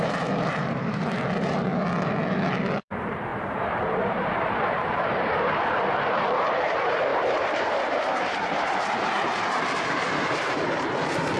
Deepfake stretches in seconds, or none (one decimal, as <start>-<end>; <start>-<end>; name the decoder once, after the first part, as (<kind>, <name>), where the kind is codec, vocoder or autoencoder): 0.0-1.7 (vocoder, BigVGAN v2); 2.8-11.4

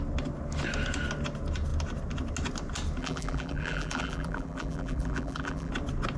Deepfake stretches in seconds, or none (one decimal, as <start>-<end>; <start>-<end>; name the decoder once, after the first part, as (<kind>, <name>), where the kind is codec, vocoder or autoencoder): 3.0-5.7 (vocoder, BigVGAN v2)

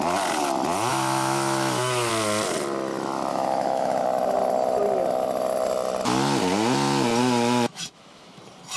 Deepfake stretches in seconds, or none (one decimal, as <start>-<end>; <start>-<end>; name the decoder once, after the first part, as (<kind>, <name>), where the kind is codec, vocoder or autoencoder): 0.9-2.1 (autoencoder, DAC-VAE); 3.3-4.0; 7.2-8.4

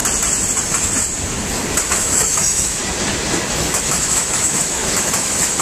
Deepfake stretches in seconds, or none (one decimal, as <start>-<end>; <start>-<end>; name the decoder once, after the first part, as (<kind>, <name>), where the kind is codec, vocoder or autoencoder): 1.8-2.8 (autoencoder, DAC-VAE); 3.5-5.6

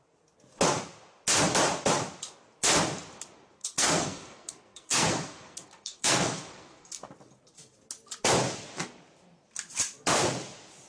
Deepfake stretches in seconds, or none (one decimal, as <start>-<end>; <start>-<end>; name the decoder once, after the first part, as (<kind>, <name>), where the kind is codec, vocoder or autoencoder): 3.6-7.1 (codec, SNAC)